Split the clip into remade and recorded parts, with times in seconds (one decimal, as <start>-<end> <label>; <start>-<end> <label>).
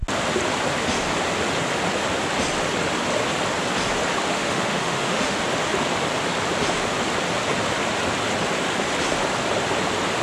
0.0-4.3 recorded; 4.3-5.4 remade; 5.4-10.2 recorded